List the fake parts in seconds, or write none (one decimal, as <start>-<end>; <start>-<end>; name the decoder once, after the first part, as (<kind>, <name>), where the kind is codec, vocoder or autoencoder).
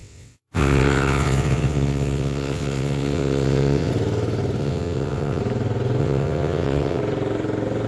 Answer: 0.0-3.9 (vocoder, WaveNeXt); 4.6-5.4; 6.0-7.0